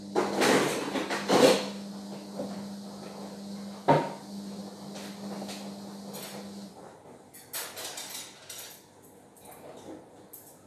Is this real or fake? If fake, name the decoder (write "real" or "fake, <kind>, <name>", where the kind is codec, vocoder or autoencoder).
real